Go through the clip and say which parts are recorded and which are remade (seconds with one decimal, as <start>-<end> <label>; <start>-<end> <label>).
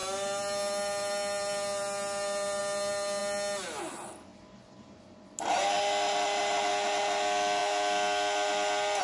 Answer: 0.0-9.0 recorded